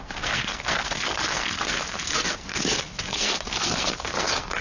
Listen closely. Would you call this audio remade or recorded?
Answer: remade